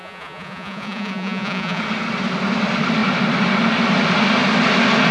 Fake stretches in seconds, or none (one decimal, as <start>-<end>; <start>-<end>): 0.0-1.8